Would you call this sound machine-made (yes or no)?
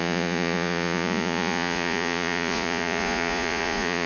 yes